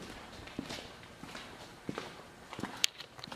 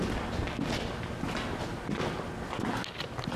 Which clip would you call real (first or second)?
second